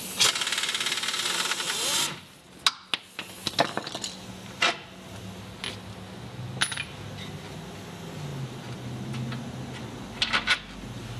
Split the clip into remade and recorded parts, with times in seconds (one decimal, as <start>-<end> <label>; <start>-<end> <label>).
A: 0.0-11.2 recorded